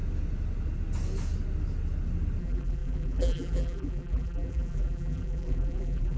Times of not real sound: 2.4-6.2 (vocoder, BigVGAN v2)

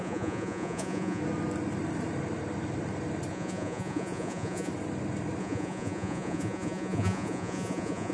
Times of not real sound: 0.0-1.2 (vocoder, Vocos); 3.3-4.7; 5.4-8.1

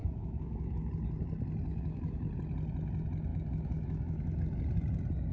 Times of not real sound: 0.0-0.9 (autoencoder, DAC-VAE); 1.7-2.3; 3.3-4.4